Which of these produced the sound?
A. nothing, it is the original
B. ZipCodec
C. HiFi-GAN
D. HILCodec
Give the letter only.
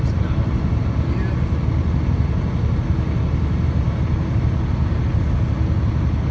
A